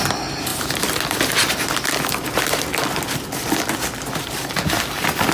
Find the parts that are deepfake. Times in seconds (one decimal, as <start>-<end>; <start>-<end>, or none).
none